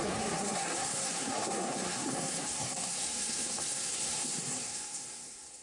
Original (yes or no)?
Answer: no